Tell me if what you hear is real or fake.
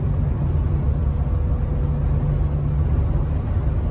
real